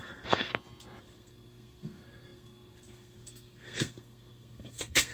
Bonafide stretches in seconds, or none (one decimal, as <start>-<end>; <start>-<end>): 0.5-1.0